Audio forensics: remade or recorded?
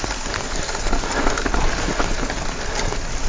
recorded